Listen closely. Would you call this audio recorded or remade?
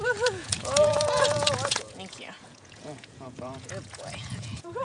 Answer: remade